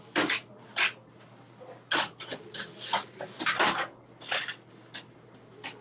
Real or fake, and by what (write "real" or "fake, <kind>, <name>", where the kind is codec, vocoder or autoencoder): real